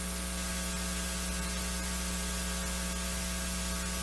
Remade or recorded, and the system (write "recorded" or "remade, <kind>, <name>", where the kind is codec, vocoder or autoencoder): recorded